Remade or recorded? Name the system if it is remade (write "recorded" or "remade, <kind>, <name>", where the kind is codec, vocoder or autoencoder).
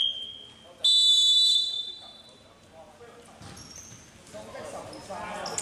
recorded